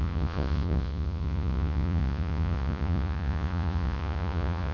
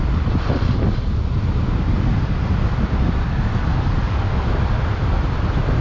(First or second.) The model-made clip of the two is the first